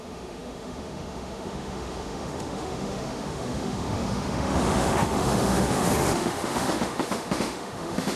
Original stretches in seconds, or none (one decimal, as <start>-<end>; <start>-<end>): none